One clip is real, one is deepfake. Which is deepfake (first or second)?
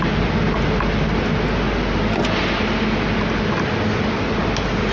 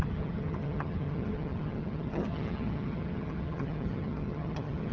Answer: second